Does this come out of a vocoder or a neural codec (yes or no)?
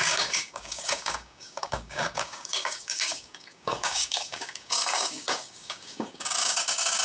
yes